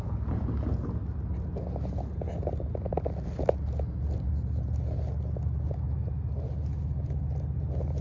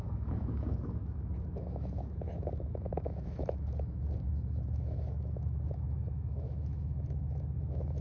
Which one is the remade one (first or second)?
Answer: second